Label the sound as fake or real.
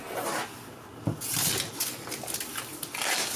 real